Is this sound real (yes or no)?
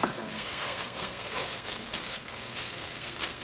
no